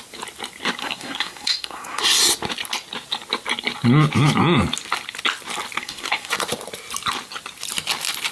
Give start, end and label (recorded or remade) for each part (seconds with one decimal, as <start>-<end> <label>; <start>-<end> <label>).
0.0-0.8 recorded; 0.8-2.0 remade; 2.0-5.8 recorded; 5.8-6.3 remade; 6.3-8.3 recorded